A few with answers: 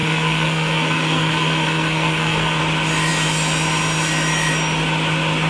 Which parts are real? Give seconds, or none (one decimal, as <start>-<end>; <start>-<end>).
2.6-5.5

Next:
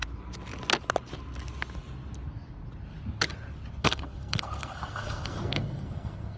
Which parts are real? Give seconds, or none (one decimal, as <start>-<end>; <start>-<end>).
0.0-3.8

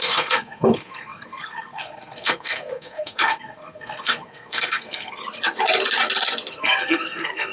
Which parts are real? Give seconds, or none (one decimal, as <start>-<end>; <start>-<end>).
5.2-6.5

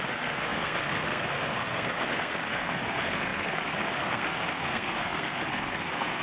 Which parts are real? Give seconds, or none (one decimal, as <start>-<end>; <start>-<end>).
none